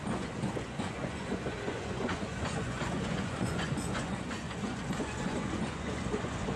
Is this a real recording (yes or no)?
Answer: no